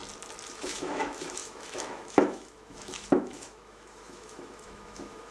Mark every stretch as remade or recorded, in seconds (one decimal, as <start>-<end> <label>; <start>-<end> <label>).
0.0-0.5 recorded; 0.5-5.3 remade